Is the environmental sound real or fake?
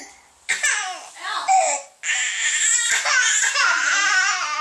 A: real